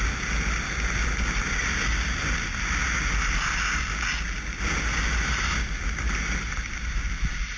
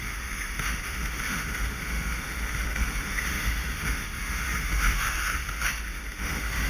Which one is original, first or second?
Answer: first